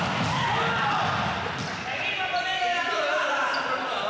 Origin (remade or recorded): recorded